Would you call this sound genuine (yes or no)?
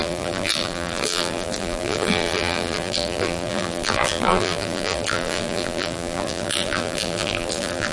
no